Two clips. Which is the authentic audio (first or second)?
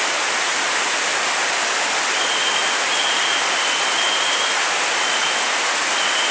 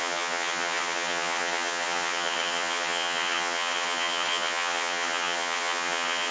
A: first